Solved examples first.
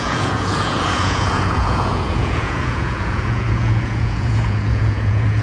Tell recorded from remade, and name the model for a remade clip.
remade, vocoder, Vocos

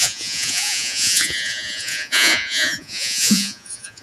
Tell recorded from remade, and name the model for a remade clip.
remade, vocoder, Vocos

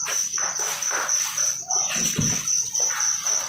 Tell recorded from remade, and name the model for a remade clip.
recorded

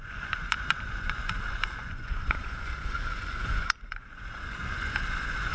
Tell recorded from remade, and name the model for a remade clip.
remade, vocoder, Vocos